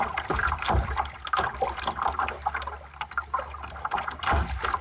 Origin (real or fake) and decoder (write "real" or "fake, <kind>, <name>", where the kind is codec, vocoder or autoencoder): real